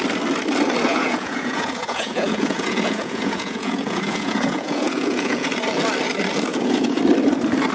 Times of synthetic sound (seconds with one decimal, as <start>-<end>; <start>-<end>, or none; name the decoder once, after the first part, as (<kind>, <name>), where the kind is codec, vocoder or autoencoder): 0.9-5.5 (vocoder, Vocos); 6.5-7.0